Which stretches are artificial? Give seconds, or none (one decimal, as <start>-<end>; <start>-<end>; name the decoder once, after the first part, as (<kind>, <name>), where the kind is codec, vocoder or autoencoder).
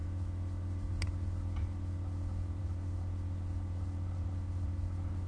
none